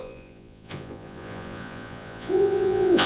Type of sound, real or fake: fake